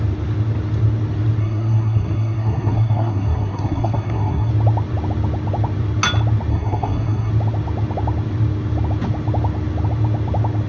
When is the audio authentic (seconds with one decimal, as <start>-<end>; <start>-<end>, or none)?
0.0-1.4; 4.5-6.5; 7.3-10.7